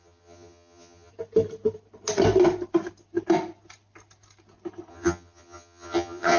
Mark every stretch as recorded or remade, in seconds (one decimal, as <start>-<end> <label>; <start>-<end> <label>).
0.0-1.1 remade; 1.1-4.9 recorded; 4.9-6.4 remade